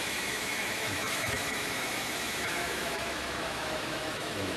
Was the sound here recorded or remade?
remade